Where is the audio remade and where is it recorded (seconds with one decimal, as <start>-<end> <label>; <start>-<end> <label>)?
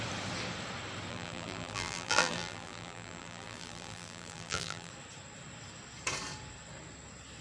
0.0-1.1 recorded; 1.1-4.9 remade; 4.9-7.4 recorded